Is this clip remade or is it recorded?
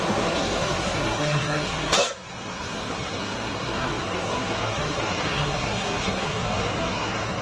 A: remade